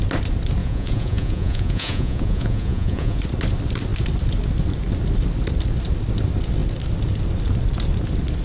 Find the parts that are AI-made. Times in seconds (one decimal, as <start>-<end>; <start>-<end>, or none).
0.6-3.2